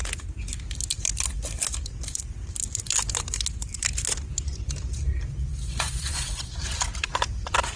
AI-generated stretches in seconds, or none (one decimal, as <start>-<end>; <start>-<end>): 5.5-6.5